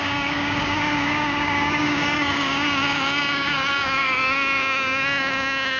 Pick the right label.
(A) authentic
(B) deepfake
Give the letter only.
B